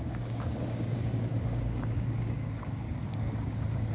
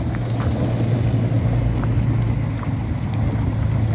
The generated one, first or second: first